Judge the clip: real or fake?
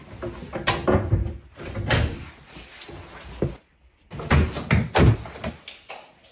real